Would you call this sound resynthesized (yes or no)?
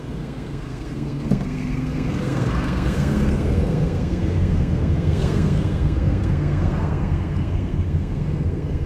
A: yes